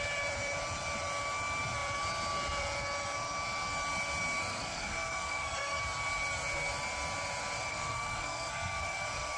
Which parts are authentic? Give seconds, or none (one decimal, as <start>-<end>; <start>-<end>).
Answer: 0.0-4.5; 5.8-7.7